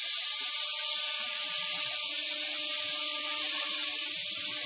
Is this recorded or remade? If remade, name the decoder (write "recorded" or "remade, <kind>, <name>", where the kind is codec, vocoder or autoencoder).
recorded